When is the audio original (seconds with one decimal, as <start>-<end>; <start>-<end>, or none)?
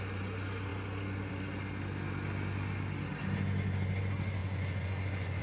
0.0-4.4